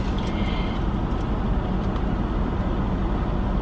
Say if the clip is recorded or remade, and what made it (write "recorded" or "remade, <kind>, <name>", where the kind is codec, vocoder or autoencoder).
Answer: recorded